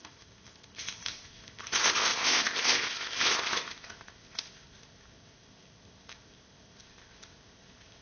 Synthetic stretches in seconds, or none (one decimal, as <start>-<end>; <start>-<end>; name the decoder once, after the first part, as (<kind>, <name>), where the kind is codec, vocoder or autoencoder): 0.0-8.0 (codec, ZipCodec)

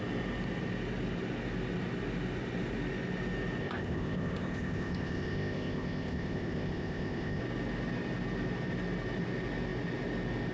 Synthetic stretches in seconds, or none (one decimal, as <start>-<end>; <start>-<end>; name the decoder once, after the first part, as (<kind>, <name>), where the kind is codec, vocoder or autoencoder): 3.6-7.4 (codec, ZipCodec)